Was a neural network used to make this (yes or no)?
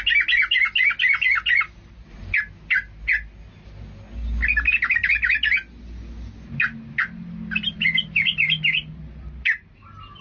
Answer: no